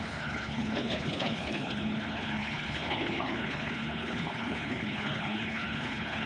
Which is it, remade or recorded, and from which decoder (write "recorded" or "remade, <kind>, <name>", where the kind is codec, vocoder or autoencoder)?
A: remade, codec, HILCodec